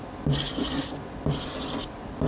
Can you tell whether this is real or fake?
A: real